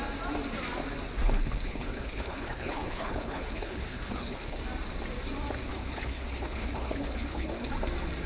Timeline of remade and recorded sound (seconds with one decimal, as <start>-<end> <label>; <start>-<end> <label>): 0.0-1.2 recorded; 1.2-4.6 remade; 4.6-5.7 recorded; 5.7-7.7 remade; 7.7-8.3 recorded